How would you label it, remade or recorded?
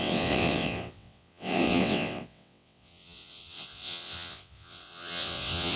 remade